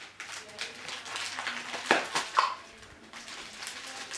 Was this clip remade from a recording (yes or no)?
no